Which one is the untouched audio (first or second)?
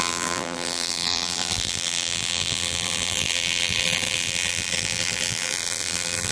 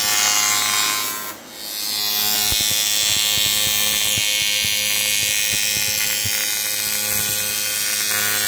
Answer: second